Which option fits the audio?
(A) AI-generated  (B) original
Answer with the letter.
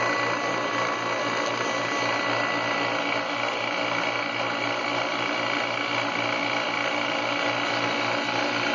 B